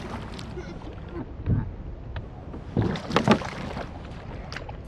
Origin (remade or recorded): recorded